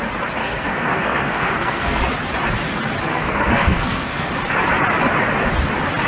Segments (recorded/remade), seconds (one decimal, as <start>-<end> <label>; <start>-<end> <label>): 0.0-0.4 recorded; 0.4-2.0 remade; 2.0-3.1 recorded; 3.1-4.3 remade; 4.3-6.1 recorded